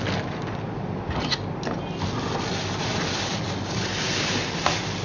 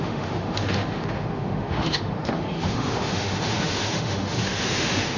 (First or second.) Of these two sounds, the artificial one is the second